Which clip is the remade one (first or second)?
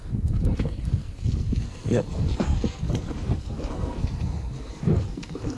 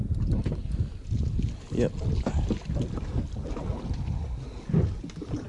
first